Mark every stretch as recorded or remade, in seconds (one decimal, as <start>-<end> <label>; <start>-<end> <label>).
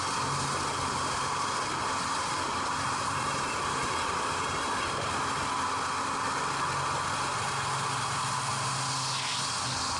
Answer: 0.0-0.8 recorded; 0.8-5.2 remade; 5.2-10.0 recorded